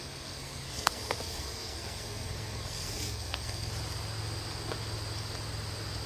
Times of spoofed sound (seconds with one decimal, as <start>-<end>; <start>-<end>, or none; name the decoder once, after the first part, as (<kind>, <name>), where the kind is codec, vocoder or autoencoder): 0.0-3.7 (codec, SNAC)